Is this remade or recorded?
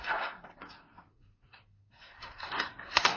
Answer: remade